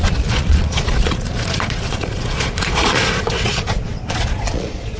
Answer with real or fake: fake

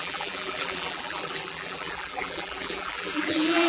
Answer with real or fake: fake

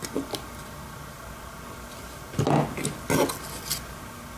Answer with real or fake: real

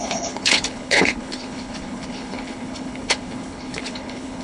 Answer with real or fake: fake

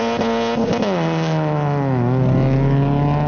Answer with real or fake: real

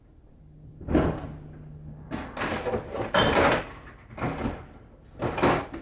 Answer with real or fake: real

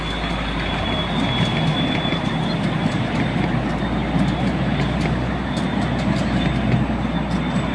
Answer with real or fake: real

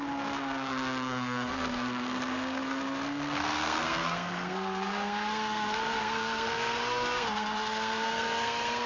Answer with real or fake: fake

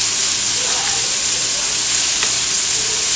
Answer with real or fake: real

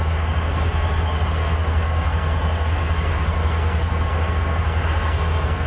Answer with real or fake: fake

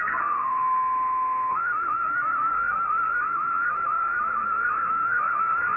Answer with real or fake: fake